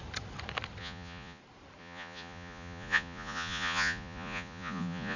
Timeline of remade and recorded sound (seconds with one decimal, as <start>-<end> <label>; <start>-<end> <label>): 0.0-0.8 recorded; 0.8-1.4 remade; 1.4-1.8 recorded; 1.8-5.2 remade